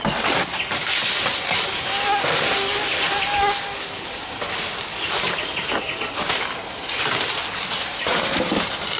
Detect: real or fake real